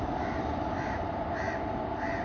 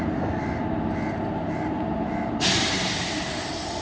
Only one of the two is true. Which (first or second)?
second